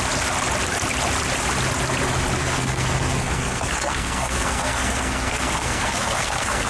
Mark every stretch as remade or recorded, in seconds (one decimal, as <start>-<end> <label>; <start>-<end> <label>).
0.0-2.4 recorded; 2.4-6.7 remade